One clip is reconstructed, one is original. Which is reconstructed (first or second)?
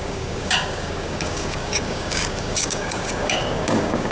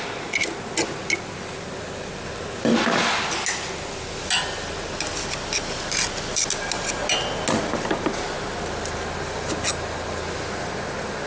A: first